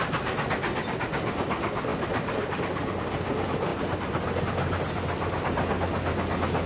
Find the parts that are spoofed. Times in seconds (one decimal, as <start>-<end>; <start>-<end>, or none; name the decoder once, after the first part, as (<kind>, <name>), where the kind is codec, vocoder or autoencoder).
1.9-2.6 (vocoder, BigVGAN v2); 3.7-4.4